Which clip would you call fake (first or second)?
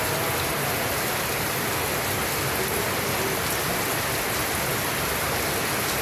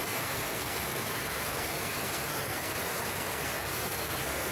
second